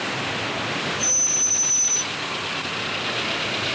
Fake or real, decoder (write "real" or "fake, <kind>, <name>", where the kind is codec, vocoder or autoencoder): real